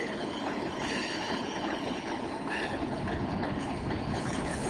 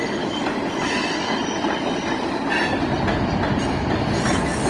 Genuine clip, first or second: second